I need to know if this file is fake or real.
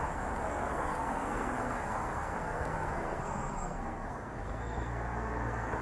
fake